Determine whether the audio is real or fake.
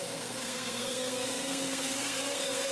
fake